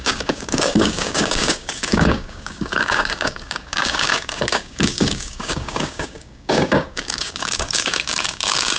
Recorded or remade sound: remade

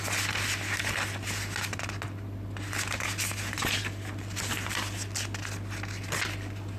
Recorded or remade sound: recorded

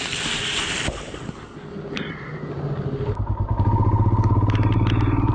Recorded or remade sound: recorded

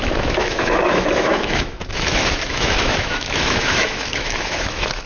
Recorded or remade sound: remade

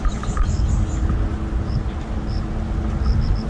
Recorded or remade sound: recorded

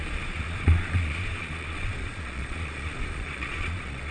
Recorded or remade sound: remade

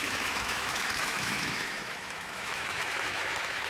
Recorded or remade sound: remade